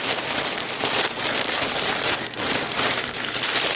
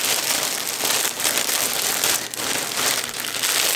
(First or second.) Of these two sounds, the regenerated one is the first